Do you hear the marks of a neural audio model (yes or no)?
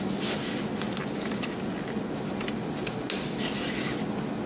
no